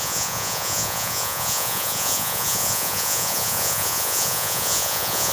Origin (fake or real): fake